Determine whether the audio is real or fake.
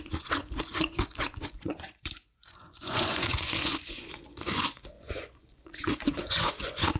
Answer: fake